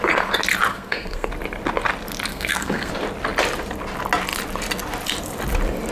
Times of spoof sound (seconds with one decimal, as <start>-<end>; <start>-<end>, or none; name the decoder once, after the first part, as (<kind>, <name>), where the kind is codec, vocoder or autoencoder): 0.7-1.3 (codec, SNAC); 2.3-2.9